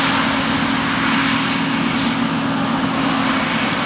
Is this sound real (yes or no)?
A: yes